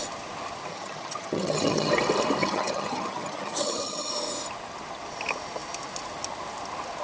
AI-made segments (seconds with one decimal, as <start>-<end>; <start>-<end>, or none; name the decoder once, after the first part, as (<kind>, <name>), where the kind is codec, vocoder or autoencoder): 0.7-1.9 (vocoder, HiFi-GAN); 2.4-4.1